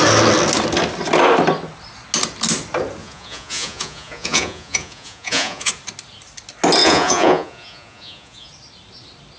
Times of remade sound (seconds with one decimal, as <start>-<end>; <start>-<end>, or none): 3.0-5.7; 6.8-8.5

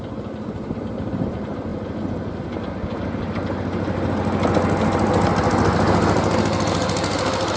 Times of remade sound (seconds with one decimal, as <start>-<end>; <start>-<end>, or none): none

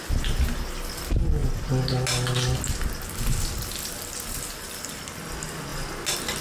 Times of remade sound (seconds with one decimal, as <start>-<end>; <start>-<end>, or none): none

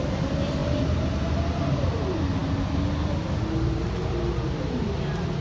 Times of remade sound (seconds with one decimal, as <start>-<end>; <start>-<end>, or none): none

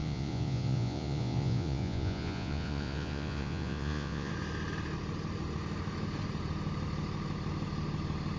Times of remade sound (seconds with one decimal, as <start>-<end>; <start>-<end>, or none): 0.0-4.3

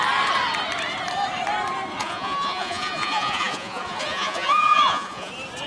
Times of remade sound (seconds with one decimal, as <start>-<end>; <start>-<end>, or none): 1.9-5.3

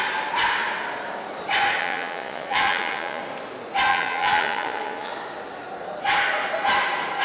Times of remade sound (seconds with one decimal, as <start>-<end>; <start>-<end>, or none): 1.8-3.2; 3.9-5.1